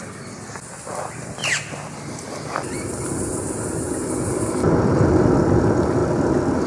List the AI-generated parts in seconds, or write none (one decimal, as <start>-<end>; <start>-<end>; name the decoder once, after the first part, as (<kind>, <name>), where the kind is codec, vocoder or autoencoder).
none